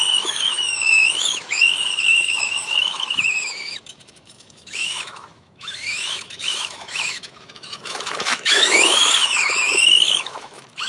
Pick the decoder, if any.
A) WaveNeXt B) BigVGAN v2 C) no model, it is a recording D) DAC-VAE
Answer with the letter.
D